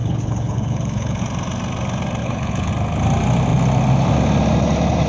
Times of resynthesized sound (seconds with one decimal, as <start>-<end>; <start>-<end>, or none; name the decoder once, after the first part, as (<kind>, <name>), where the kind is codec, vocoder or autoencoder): 0.0-1.2 (codec, HILCodec); 2.2-2.7